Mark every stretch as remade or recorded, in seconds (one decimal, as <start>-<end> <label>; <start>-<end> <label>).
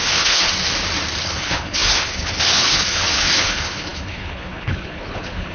0.0-0.5 remade; 0.5-1.2 recorded; 1.2-5.5 remade